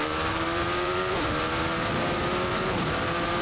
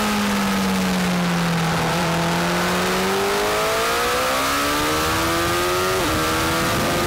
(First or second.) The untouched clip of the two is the second